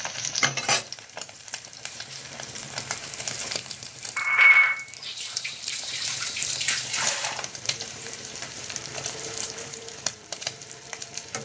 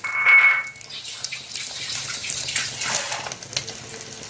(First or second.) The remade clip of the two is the first